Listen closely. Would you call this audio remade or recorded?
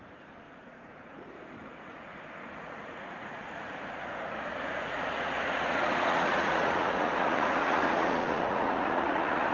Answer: remade